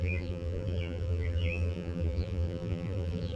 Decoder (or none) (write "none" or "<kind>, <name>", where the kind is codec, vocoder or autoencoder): vocoder, BigVGAN v2